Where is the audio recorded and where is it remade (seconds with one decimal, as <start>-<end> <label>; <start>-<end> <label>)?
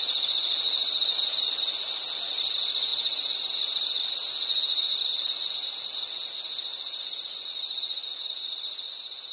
0.0-6.7 recorded; 6.7-7.8 remade; 7.8-9.3 recorded